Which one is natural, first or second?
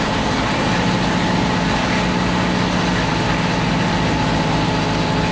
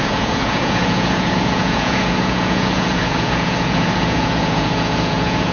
first